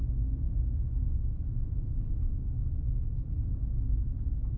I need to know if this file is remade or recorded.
recorded